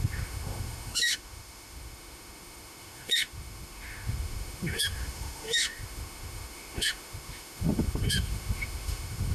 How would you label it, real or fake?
fake